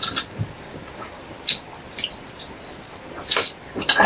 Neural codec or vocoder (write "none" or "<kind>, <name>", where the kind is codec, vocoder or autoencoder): none